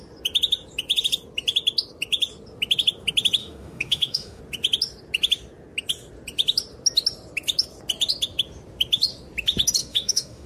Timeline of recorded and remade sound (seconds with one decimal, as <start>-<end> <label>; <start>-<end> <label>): 0.0-3.4 recorded; 3.4-4.4 remade; 4.4-9.8 recorded; 9.8-10.5 remade